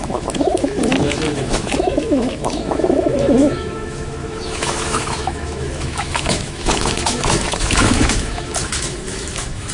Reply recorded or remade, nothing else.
remade